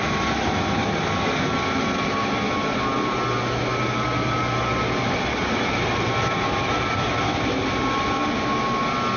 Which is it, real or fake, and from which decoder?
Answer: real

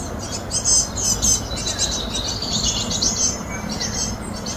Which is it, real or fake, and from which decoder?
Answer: real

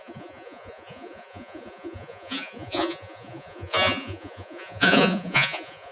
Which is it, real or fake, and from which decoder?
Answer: fake, vocoder, Vocos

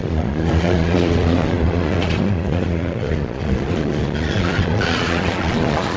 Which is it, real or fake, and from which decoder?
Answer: fake, vocoder, Vocos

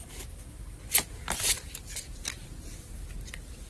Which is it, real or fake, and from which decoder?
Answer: real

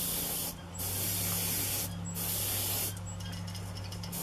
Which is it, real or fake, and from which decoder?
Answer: real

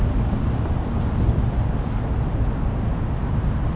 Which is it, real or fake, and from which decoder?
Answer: real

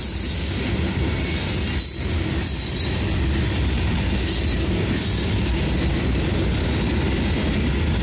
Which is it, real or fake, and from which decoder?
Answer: real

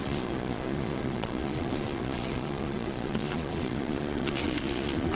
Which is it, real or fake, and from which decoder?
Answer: fake, vocoder, Vocos